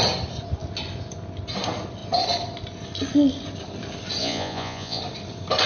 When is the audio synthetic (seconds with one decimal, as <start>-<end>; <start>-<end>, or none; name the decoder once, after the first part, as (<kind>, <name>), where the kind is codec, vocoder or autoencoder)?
4.2-5.0 (vocoder, Vocos)